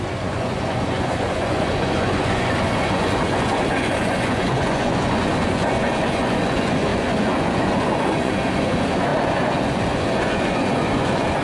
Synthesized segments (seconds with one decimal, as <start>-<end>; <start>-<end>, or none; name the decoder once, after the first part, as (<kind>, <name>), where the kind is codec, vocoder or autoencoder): 0.0-11.4 (vocoder, Vocos)